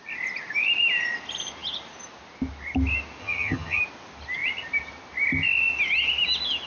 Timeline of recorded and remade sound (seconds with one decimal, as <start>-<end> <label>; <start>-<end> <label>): 0.0-3.2 recorded; 3.2-3.8 remade; 3.8-6.7 recorded